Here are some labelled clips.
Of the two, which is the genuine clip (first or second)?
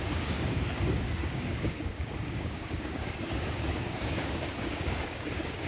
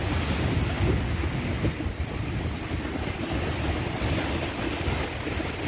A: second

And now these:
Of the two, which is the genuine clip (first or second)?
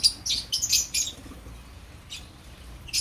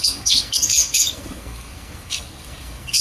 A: first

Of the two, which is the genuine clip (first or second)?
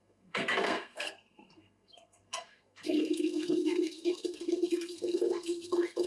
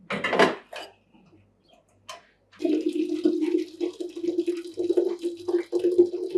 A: second